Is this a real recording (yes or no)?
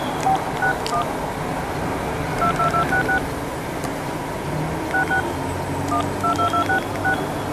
yes